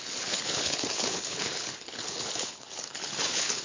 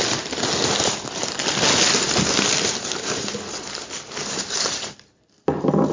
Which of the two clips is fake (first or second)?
first